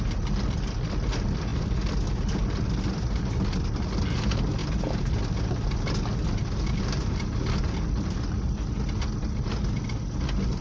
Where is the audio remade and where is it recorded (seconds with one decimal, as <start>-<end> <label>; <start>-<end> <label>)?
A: 0.0-10.6 recorded